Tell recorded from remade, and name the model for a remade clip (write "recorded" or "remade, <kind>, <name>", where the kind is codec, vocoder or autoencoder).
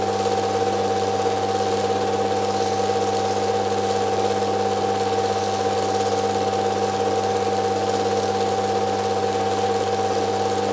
recorded